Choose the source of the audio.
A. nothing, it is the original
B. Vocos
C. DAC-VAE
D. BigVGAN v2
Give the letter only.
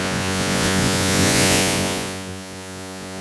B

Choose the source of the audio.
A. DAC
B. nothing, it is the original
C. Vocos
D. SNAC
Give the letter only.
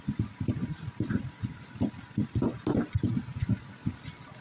B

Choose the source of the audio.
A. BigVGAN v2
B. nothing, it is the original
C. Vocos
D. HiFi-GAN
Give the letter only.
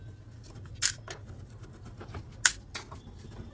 B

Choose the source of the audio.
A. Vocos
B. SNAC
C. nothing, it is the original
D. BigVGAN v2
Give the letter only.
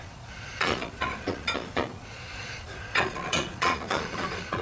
A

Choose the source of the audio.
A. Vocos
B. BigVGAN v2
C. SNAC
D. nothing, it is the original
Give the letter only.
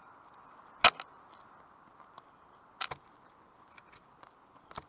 D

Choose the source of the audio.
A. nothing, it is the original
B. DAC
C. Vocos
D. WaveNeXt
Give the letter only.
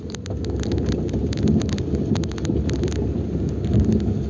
A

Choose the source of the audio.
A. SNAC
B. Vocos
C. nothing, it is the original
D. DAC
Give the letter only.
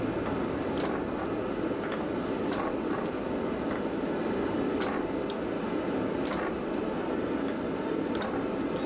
C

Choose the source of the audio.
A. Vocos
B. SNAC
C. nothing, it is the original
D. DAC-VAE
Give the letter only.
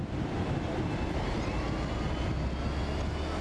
C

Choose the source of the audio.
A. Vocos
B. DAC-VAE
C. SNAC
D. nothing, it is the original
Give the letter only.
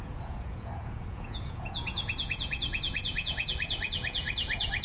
A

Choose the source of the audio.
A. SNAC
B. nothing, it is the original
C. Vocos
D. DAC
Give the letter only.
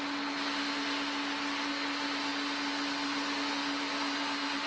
B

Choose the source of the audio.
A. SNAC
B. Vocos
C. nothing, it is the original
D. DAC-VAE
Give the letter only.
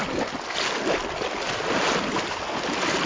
C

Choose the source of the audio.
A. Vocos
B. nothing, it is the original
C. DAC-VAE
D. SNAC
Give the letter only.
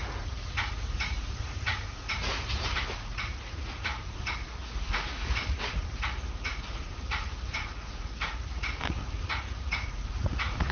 A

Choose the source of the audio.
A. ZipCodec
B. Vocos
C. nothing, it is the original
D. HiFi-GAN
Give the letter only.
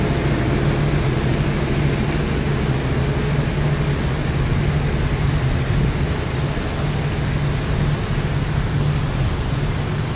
C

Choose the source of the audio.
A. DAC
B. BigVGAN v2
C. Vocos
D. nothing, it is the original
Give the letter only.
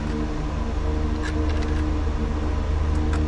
D